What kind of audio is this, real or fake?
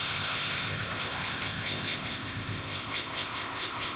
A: fake